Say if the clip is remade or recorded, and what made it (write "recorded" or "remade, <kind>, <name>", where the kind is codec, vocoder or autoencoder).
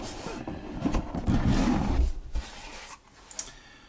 recorded